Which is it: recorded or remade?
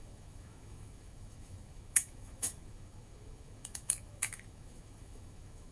remade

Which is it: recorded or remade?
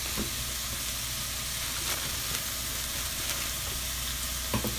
recorded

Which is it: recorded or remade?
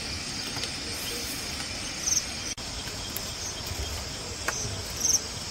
recorded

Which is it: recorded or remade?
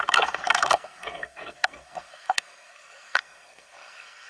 remade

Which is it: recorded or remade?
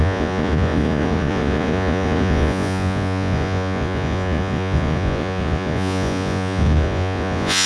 remade